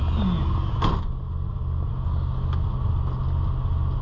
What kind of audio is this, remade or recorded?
recorded